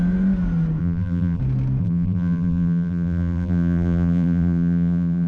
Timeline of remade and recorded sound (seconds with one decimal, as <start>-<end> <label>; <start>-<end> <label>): 0.0-0.8 recorded; 0.8-1.4 remade; 1.4-1.8 recorded; 1.8-5.3 remade